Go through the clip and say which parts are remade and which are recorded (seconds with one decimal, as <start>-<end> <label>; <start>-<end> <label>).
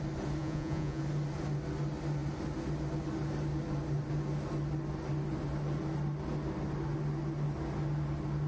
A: 0.0-0.4 recorded; 0.4-1.0 remade; 1.0-8.5 recorded